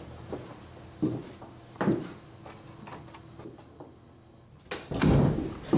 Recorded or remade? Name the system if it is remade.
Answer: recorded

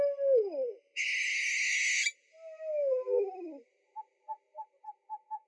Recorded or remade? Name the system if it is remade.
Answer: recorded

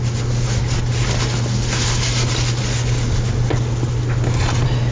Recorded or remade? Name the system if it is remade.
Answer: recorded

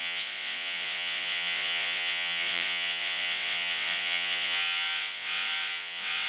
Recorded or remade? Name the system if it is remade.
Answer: remade, vocoder, WaveNeXt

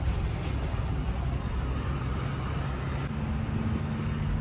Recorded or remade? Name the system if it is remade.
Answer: recorded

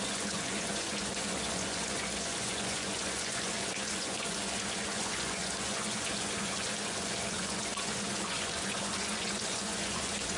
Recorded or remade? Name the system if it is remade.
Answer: remade, vocoder, Vocos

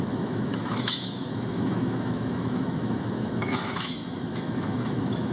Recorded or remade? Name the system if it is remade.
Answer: remade, autoencoder, DAC-VAE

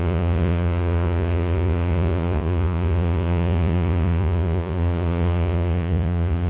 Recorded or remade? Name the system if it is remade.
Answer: remade, vocoder, Vocos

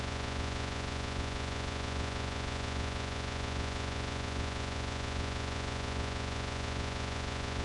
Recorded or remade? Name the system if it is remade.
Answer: remade, vocoder, Vocos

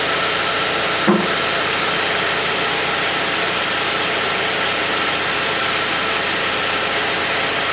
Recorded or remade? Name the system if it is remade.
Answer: recorded